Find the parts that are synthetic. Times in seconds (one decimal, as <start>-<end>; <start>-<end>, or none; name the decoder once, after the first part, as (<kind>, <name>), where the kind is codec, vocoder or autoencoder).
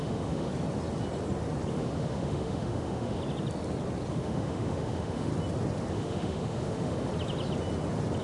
0.0-0.5 (autoencoder, DAC-VAE); 1.7-3.2; 4.1-5.3; 5.9-7.1